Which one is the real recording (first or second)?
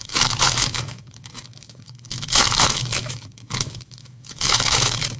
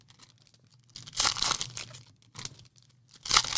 second